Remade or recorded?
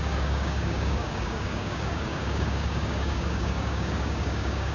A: remade